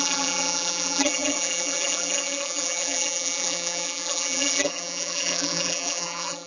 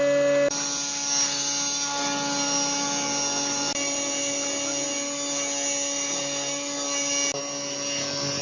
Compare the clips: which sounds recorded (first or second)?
second